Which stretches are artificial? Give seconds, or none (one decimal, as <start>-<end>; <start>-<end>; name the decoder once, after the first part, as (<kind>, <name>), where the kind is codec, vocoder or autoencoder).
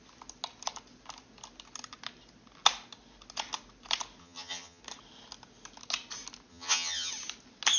4.2-4.8 (vocoder, HiFi-GAN); 6.5-7.1